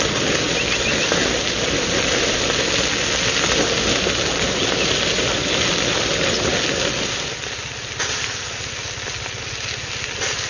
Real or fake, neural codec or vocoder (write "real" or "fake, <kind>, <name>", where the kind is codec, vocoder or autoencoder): real